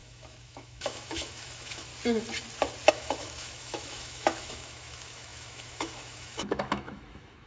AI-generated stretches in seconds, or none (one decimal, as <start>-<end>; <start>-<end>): 0.0-1.9; 2.9-7.5